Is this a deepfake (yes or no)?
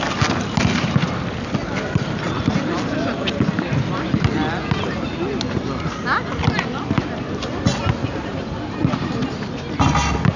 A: no